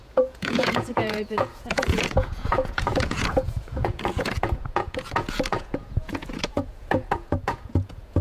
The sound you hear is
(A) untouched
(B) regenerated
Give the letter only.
B